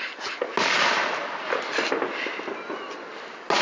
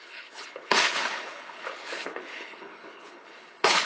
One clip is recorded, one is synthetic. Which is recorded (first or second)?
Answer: first